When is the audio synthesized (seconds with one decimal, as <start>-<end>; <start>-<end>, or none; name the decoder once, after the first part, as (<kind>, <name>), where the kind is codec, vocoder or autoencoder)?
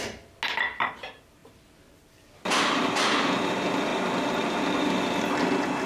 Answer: none